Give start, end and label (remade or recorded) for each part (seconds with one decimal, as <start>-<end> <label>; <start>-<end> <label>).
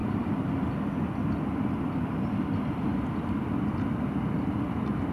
0.0-5.1 recorded